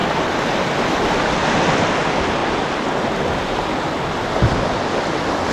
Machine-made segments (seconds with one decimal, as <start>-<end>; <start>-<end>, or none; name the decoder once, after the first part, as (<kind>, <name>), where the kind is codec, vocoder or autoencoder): none